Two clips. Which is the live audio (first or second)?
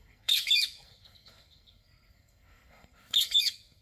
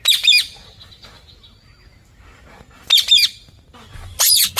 second